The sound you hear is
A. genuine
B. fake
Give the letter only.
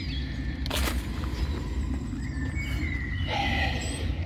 A